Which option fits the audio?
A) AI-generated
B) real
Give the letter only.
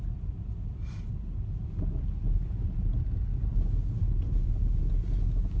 B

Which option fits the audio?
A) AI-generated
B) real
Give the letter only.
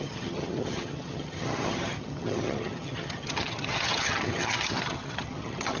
A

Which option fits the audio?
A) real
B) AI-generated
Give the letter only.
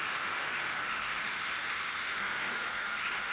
B